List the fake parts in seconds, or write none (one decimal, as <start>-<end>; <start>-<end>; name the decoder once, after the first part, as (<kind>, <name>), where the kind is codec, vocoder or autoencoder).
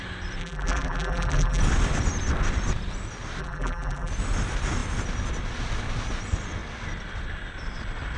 0.4-1.6 (vocoder, BigVGAN v2); 3.4-4.1